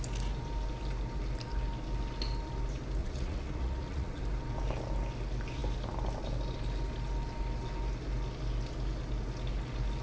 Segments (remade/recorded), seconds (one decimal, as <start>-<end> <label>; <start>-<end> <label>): 0.0-3.0 recorded; 3.0-4.2 remade; 4.2-10.0 recorded